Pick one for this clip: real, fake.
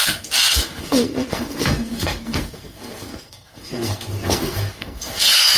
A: fake